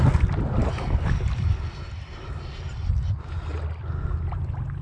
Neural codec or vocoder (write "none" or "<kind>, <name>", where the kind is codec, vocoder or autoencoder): none